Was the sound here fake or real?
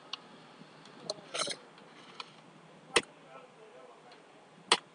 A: real